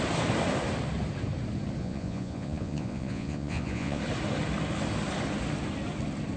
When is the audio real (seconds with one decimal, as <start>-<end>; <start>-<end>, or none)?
0.0-1.8; 4.0-6.4